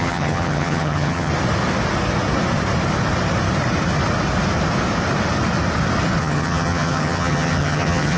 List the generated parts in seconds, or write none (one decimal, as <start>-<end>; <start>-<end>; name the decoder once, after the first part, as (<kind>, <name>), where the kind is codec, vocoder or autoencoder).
0.0-1.3 (vocoder, HiFi-GAN); 6.2-8.2